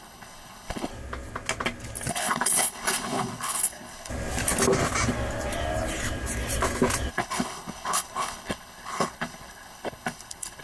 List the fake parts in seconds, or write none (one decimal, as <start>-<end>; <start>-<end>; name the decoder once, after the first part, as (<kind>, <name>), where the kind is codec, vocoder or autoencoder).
0.0-0.9 (codec, HILCodec); 2.1-4.1; 7.1-10.6